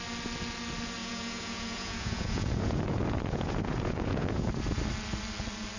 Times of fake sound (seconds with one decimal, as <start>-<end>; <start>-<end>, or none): 1.0-4.5